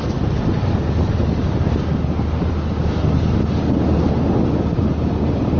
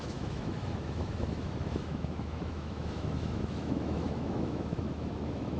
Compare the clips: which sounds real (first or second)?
first